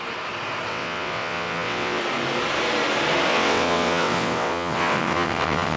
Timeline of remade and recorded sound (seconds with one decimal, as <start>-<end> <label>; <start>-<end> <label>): 0.0-0.7 recorded; 0.7-2.0 remade; 2.0-3.3 recorded; 3.3-5.8 remade